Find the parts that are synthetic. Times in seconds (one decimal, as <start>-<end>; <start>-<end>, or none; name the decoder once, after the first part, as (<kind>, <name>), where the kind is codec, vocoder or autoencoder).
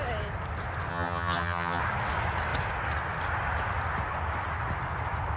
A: 0.9-1.8 (vocoder, HiFi-GAN)